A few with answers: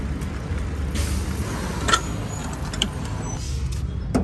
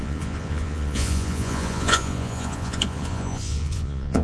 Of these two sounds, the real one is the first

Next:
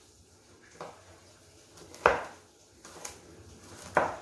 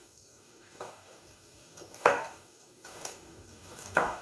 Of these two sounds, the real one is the first